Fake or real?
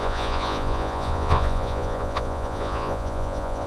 fake